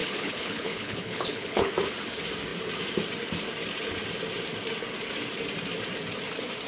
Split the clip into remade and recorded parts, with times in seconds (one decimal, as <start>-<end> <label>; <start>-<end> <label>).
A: 0.0-1.7 remade; 1.7-6.7 recorded